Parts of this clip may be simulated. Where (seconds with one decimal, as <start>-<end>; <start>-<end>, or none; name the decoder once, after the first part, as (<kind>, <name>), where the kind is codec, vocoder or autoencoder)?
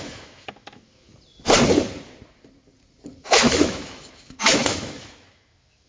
0.0-1.1 (autoencoder, DAC-VAE); 3.2-5.9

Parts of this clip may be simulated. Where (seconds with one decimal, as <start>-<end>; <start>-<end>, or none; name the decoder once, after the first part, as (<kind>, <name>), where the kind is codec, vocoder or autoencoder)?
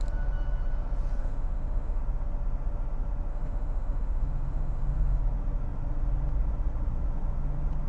1.2-2.0 (autoencoder, DAC-VAE); 3.3-5.2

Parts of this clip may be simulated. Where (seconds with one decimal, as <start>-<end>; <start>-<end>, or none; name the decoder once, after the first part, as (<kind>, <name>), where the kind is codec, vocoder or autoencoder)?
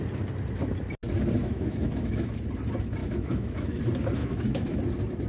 1.4-2.3 (autoencoder, DAC-VAE); 3.0-3.8; 4.2-4.8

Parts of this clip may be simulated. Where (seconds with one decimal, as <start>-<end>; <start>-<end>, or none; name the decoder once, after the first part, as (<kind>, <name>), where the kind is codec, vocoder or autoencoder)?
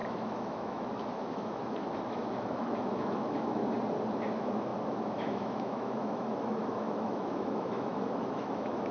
0.0-3.6 (autoencoder, DAC-VAE); 4.2-8.9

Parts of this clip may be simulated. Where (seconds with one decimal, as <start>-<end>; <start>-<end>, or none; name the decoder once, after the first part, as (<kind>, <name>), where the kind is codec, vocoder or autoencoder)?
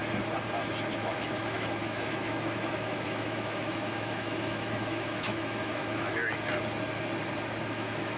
0.9-6.2 (autoencoder, DAC-VAE); 7.6-8.2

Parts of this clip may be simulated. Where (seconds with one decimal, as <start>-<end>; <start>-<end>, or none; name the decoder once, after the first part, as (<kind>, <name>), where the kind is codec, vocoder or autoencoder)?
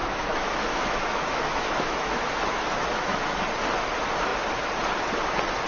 0.0-3.4 (autoencoder, DAC-VAE)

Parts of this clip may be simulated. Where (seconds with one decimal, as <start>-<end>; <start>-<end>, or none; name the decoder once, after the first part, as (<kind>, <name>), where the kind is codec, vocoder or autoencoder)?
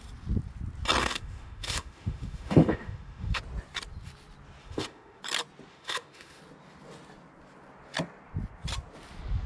1.0-3.4 (autoencoder, DAC-VAE); 4.6-5.2; 5.7-6.4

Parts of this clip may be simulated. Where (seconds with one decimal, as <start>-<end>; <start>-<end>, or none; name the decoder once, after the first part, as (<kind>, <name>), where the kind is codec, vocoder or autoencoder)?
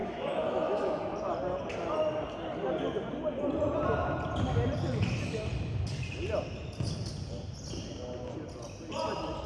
0.0-1.0 (autoencoder, DAC-VAE)